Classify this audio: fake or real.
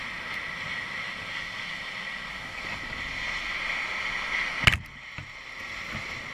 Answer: real